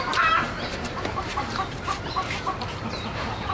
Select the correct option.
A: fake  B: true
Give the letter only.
A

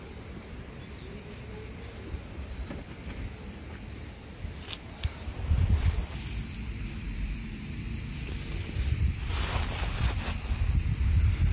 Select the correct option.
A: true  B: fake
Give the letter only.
B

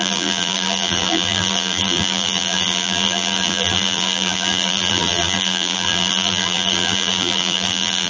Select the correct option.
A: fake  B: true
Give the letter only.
A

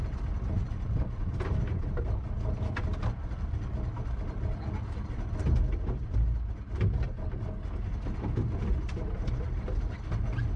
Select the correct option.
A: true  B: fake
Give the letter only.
A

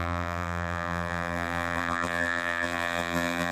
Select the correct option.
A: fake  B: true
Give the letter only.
A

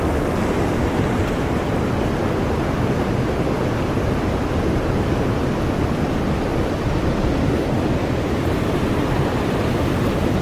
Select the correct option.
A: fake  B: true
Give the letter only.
B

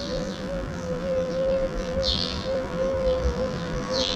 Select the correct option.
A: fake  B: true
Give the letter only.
A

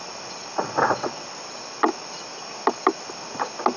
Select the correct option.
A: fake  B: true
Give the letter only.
B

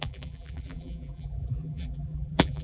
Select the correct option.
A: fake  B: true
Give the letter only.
A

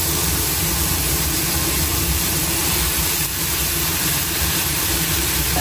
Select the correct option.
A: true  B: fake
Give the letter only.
B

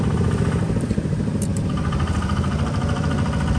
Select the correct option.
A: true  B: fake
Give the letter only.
B